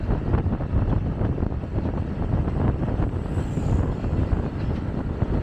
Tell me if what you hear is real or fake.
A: real